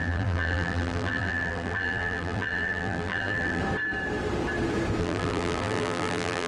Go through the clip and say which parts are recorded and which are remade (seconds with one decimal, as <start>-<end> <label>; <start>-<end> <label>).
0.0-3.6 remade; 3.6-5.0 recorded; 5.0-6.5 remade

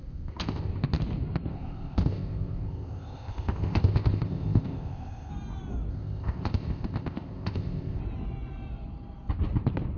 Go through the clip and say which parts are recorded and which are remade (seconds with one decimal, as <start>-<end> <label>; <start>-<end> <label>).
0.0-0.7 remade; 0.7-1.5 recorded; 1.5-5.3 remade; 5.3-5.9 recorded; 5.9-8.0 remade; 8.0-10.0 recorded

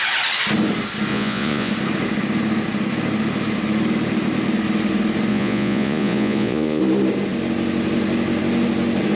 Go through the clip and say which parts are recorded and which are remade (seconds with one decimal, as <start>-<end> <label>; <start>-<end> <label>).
0.0-1.1 recorded; 1.1-1.7 remade; 1.7-5.3 recorded; 5.3-6.8 remade; 6.8-9.2 recorded